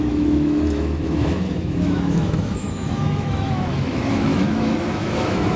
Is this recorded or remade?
remade